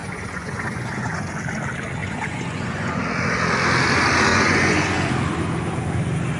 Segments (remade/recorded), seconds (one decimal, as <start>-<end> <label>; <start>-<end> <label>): 0.0-1.3 remade; 1.3-2.0 recorded; 2.0-3.0 remade; 3.0-4.3 recorded; 4.3-5.1 remade; 5.1-6.4 recorded